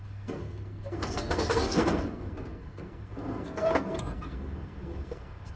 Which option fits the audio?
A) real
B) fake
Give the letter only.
B